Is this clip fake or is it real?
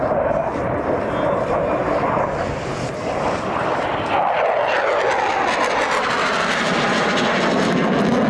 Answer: real